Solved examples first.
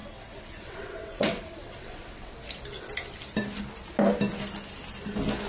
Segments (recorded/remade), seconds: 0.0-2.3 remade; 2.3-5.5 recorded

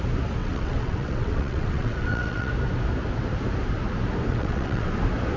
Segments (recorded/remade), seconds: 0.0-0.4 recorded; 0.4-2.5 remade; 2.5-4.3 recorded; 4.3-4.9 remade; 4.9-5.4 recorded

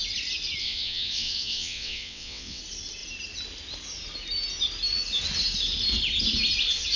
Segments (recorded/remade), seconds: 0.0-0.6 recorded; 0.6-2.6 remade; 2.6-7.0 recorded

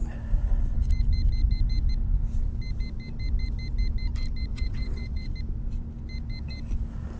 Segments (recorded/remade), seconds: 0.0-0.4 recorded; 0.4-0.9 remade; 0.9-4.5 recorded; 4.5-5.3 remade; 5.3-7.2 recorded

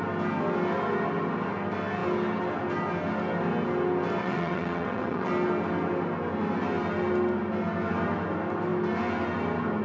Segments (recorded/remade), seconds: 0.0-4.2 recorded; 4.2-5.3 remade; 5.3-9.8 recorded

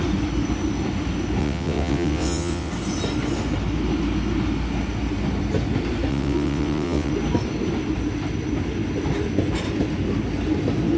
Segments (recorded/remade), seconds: 0.0-1.4 recorded; 1.4-2.7 remade; 2.7-6.1 recorded; 6.1-7.1 remade; 7.1-11.0 recorded

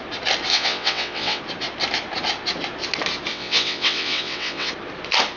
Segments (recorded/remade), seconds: 0.0-0.5 recorded; 0.5-1.4 remade; 1.4-3.3 recorded; 3.3-4.7 remade; 4.7-5.4 recorded

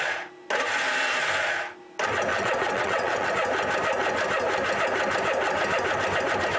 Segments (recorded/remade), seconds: 0.0-2.3 recorded; 2.3-3.3 remade; 3.3-6.6 recorded